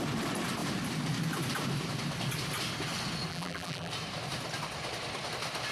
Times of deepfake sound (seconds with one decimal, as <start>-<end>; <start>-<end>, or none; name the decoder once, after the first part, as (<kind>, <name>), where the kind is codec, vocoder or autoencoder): 3.3-3.9 (vocoder, BigVGAN v2)